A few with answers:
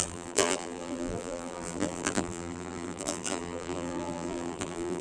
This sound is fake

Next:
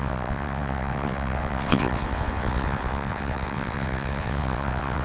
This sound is fake